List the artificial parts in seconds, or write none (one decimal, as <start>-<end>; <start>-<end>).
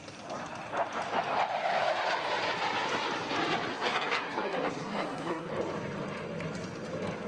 3.7-5.5